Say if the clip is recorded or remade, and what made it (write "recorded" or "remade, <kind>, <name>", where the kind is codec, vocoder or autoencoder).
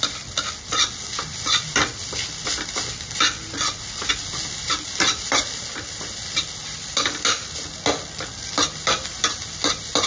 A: recorded